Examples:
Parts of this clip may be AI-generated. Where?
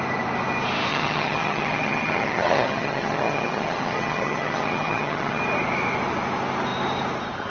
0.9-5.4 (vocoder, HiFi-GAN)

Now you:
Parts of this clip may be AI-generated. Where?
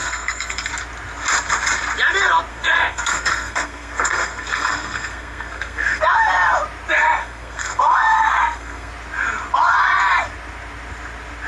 0.0-0.7 (codec, SNAC); 2.5-6.0; 7.2-8.9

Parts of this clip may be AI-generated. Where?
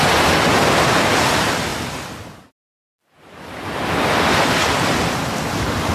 none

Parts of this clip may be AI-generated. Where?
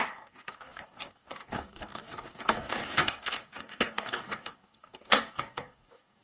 0.0-6.2 (codec, DAC)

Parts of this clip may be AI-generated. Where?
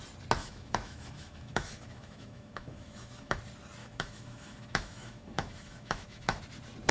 0.4-3.4 (autoencoder, DAC-VAE); 3.8-6.4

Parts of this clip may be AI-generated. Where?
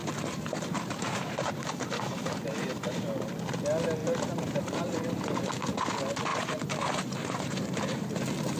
0.0-3.2 (vocoder, BigVGAN v2); 4.0-5.5; 6.3-8.1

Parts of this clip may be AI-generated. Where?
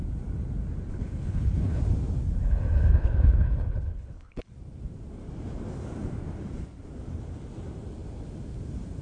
0.9-1.8 (codec, HILCodec); 2.9-4.5